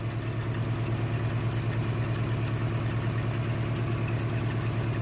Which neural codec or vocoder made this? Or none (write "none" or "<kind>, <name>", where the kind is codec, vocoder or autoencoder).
none